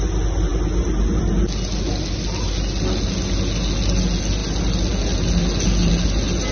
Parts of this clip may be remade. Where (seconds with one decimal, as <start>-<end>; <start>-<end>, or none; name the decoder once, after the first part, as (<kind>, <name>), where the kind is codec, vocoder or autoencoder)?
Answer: none